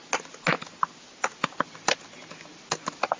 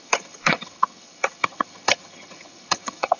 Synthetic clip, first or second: second